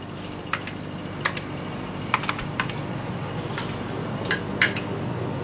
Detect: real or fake real